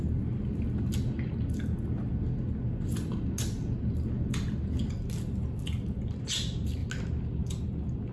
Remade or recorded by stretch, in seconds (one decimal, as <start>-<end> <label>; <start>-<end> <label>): 0.0-8.1 recorded